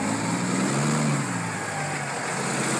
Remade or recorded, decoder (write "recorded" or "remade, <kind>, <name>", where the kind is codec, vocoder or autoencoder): recorded